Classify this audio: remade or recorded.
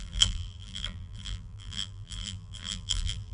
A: remade